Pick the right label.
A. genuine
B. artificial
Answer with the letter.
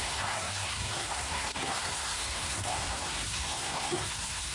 B